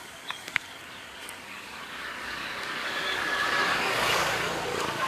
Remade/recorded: remade